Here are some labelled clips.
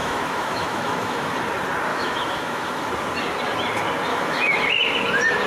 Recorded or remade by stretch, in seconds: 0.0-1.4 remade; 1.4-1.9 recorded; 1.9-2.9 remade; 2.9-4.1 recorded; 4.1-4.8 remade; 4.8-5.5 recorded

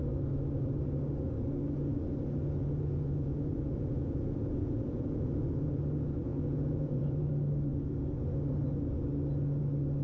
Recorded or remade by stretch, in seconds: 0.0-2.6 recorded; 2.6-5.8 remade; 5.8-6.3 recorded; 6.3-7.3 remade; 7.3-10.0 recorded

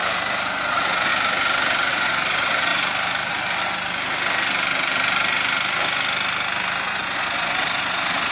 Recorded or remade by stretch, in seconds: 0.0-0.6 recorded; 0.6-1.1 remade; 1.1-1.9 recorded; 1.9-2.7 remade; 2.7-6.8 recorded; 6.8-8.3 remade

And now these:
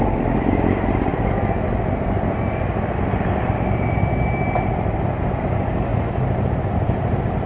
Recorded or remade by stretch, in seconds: 0.0-7.5 recorded

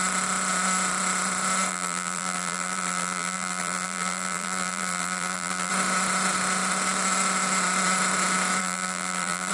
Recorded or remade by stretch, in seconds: 0.0-1.7 recorded; 1.7-5.7 remade; 5.7-8.6 recorded; 8.6-9.5 remade

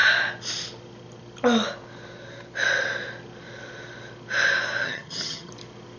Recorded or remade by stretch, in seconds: 0.0-4.8 recorded; 4.8-5.5 remade; 5.5-6.0 recorded